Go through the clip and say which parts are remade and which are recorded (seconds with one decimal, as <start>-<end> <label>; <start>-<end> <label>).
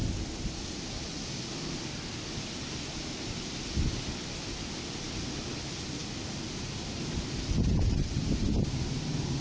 0.0-9.4 recorded